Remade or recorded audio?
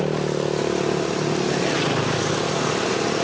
recorded